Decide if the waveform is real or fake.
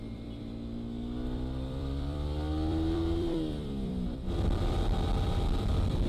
fake